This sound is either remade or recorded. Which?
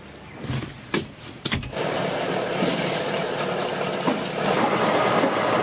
recorded